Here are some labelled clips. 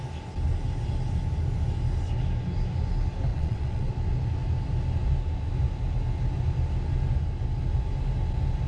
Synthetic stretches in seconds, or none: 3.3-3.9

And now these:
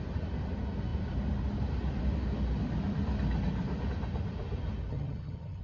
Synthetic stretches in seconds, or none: 4.9-5.6

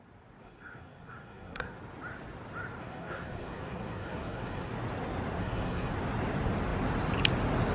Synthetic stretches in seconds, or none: 0.4-1.8; 2.8-4.7; 5.4-5.9